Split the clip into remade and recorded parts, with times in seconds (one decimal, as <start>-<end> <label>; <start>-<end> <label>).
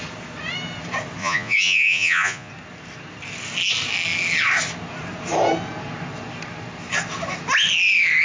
0.0-1.2 recorded; 1.2-2.5 remade; 2.5-8.2 recorded